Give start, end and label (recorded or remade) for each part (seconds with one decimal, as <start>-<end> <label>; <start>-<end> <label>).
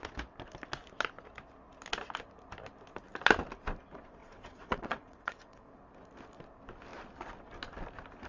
0.0-4.2 recorded; 4.2-5.8 remade; 5.8-8.3 recorded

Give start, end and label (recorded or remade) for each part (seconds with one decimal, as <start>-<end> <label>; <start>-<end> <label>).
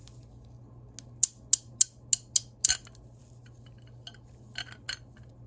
0.0-5.5 recorded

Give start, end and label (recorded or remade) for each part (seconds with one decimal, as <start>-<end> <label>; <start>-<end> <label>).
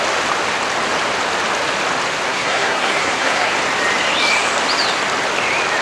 0.0-2.3 recorded; 2.3-3.5 remade; 3.5-5.8 recorded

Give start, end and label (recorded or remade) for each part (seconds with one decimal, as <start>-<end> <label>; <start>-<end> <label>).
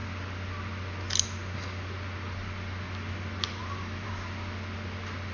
0.0-3.6 recorded; 3.6-4.1 remade; 4.1-5.3 recorded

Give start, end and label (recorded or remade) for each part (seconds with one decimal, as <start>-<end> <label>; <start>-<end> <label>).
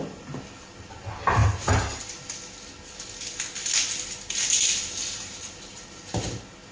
0.0-1.4 recorded; 1.4-2.0 remade; 2.0-6.7 recorded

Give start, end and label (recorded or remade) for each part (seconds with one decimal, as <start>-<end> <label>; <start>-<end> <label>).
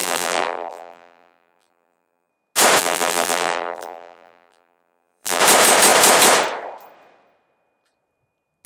0.0-2.3 remade; 2.3-2.8 recorded; 2.8-5.4 remade; 5.4-8.7 recorded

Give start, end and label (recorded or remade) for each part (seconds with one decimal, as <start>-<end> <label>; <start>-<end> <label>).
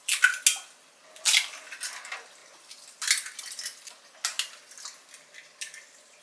0.0-6.2 recorded